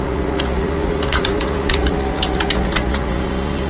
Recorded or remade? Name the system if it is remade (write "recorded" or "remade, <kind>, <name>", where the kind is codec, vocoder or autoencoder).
remade, vocoder, Vocos